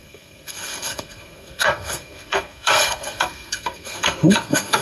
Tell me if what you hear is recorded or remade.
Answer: remade